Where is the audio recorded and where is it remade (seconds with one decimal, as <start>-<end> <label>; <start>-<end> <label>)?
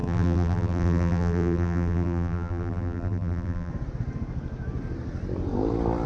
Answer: 0.0-3.7 remade; 3.7-6.1 recorded